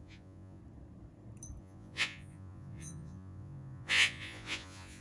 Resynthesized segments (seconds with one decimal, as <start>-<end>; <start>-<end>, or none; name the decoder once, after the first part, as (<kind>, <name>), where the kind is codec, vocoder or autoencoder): 0.0-0.6 (vocoder, Vocos); 1.6-5.0